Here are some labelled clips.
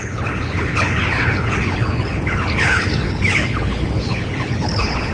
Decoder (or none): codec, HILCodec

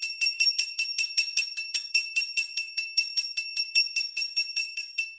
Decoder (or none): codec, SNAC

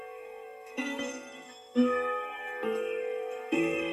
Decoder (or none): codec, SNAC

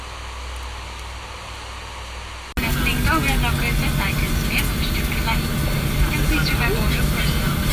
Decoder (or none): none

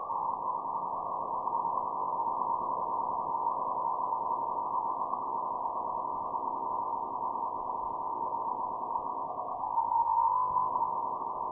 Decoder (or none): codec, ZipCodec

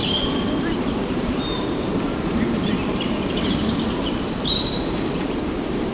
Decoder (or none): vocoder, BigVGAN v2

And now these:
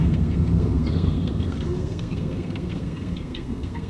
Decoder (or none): codec, SNAC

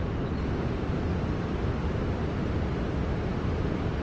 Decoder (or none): none